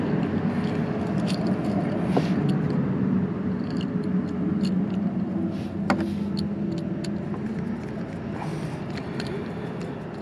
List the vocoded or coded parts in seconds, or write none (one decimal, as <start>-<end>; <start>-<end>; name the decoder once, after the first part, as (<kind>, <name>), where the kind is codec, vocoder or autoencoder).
none